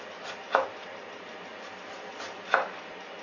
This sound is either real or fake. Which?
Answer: real